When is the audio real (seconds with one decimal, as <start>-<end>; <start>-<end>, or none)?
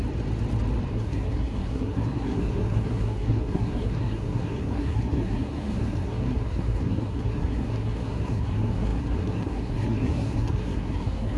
0.0-0.9